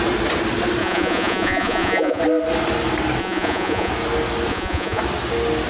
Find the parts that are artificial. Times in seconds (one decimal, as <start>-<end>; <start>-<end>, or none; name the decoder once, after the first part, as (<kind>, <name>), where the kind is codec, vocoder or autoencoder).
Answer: 0.8-2.2 (vocoder, Vocos); 3.2-3.9; 4.5-5.0